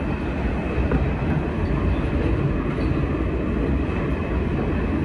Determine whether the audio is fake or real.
real